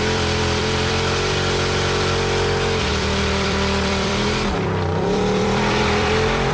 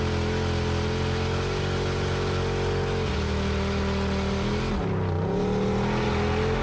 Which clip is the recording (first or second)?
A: second